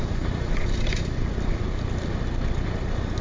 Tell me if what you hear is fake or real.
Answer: real